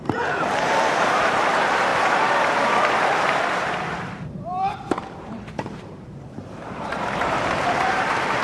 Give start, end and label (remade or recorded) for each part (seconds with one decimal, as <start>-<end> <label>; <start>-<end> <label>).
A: 0.0-8.4 remade